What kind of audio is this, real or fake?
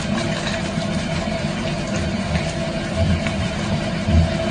real